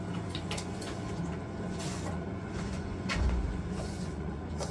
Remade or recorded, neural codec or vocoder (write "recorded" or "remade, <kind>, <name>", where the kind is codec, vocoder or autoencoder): remade, vocoder, Vocos